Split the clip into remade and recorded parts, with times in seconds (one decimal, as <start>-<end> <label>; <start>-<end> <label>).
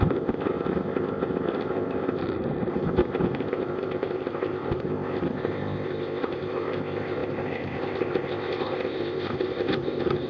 0.0-2.2 remade; 2.2-2.7 recorded; 2.7-10.3 remade